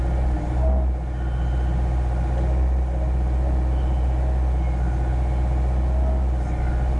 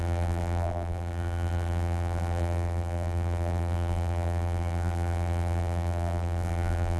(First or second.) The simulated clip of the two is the second